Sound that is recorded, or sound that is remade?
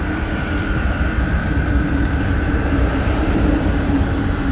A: remade